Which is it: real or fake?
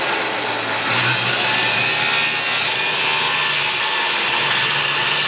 real